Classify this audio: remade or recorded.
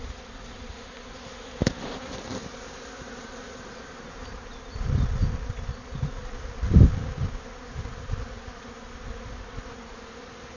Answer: recorded